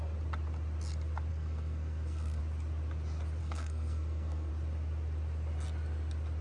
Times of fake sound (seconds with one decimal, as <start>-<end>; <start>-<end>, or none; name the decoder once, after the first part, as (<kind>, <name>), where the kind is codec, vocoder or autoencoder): 1.3-2.4 (codec, SNAC); 3.4-4.5

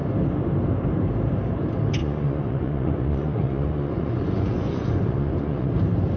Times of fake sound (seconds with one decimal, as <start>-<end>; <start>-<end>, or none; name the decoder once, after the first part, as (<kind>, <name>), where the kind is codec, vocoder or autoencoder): 2.0-5.7 (vocoder, Vocos)

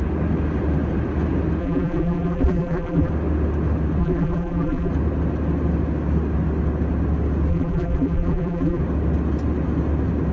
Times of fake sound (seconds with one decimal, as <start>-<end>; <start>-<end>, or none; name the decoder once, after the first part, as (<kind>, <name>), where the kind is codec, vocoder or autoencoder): 1.6-3.1 (vocoder, BigVGAN v2); 4.0-4.9; 7.5-8.8

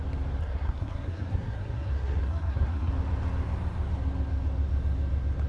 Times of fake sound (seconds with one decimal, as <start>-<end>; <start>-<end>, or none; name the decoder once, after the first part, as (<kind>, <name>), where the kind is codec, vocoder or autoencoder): 0.4-2.9 (codec, SNAC)

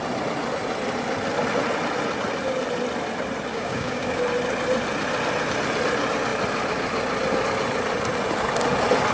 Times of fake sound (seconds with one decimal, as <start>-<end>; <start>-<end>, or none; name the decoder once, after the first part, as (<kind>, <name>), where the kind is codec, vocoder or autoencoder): 3.5-4.2 (codec, DAC)

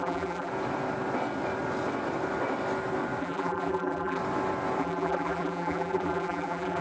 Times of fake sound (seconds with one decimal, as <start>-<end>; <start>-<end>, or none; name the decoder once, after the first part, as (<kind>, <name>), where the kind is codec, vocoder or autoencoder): 0.0-0.5 (vocoder, BigVGAN v2); 3.2-4.2; 4.8-6.8

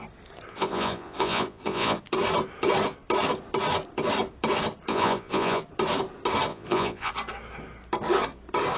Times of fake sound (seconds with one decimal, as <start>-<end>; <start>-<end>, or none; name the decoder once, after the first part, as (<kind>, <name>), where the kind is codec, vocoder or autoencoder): 0.5-2.0 (vocoder, Vocos); 4.9-5.6; 6.5-7.1